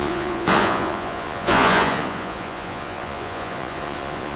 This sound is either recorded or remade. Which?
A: remade